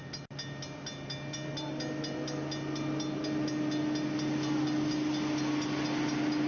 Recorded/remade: recorded